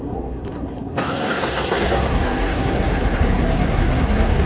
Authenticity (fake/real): fake